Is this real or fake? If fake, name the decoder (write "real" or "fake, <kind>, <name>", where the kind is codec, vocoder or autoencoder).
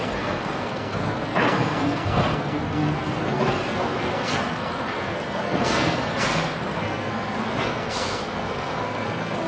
fake, codec, SNAC